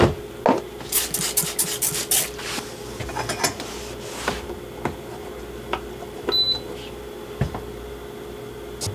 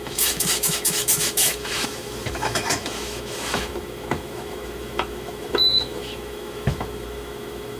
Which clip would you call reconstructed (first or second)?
second